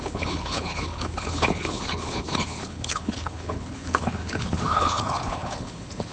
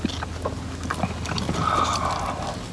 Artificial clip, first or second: first